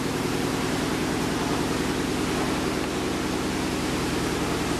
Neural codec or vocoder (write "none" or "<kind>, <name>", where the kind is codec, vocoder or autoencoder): none